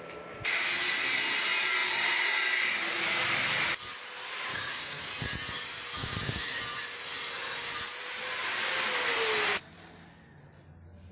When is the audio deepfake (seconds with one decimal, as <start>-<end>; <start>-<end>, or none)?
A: 4.5-5.1; 6.0-6.6